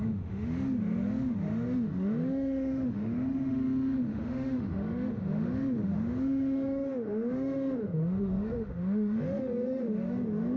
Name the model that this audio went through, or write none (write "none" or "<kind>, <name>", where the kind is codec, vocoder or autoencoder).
autoencoder, DAC-VAE